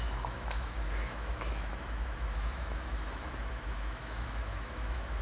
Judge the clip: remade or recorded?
remade